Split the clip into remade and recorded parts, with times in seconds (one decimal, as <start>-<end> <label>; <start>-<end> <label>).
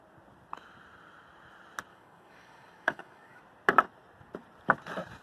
0.0-1.9 recorded; 1.9-3.4 remade; 3.4-5.2 recorded